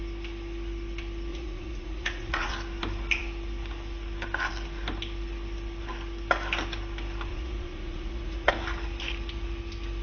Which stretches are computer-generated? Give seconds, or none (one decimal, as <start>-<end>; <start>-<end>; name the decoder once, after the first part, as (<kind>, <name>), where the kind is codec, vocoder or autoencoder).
1.3-2.5 (vocoder, Vocos); 7.3-8.5